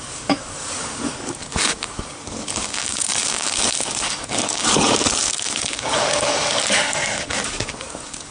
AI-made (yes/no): yes